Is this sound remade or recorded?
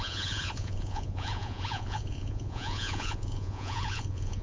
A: remade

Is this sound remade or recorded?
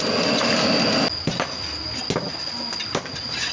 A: recorded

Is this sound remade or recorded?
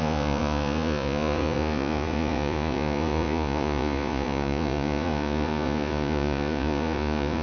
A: remade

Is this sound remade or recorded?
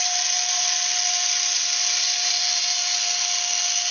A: recorded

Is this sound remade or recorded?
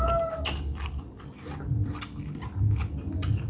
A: recorded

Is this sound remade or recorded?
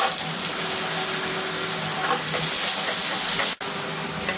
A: recorded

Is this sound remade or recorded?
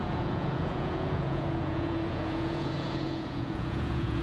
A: remade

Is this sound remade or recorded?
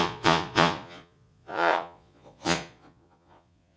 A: remade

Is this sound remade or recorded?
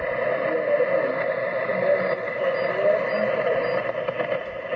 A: recorded